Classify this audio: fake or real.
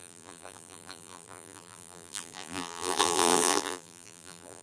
fake